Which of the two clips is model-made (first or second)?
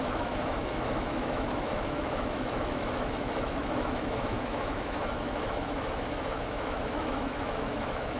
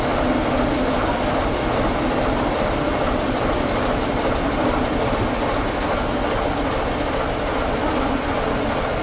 first